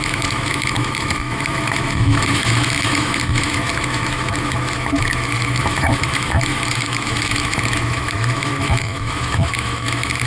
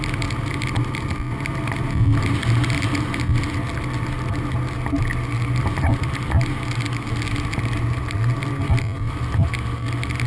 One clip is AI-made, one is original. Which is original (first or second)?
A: second